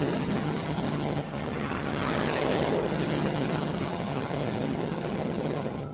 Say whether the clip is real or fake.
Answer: fake